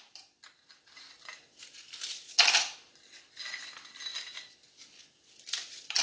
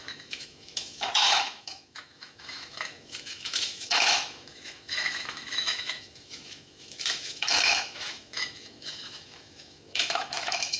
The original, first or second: first